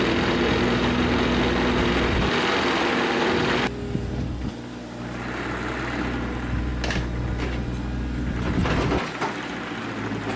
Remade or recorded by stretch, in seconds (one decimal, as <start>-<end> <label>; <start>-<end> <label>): 0.0-10.4 recorded